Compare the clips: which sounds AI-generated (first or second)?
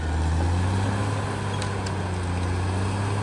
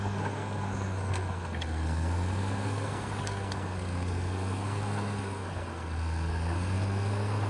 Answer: second